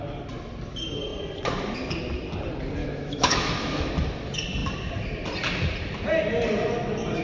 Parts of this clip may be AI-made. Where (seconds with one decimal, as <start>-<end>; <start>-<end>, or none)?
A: 2.8-3.9